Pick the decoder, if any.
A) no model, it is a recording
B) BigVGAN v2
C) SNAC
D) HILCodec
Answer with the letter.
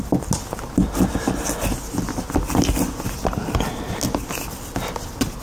A